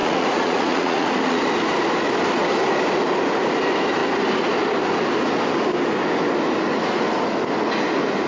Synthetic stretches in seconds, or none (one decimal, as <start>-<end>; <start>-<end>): 0.0-1.4

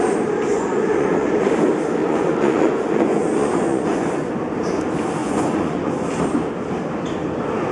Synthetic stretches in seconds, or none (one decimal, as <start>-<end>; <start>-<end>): 0.5-1.5; 2.0-4.1; 5.2-5.9

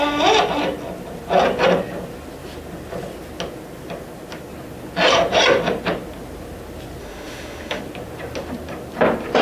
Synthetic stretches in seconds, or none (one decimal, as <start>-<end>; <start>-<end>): 7.0-7.8

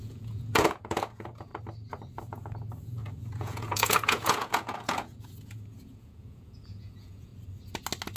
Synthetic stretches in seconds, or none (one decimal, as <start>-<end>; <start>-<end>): 0.0-1.5; 2.2-7.3